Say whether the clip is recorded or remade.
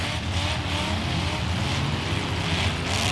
recorded